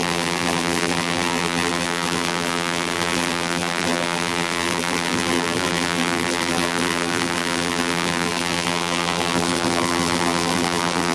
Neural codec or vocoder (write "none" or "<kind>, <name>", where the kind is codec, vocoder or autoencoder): vocoder, BigVGAN v2